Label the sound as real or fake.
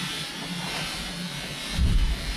fake